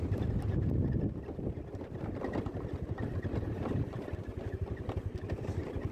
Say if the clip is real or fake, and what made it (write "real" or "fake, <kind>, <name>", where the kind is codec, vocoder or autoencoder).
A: fake, vocoder, BigVGAN v2